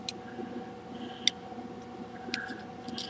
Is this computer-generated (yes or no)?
no